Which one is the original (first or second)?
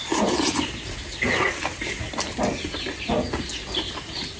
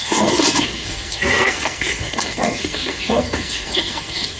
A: first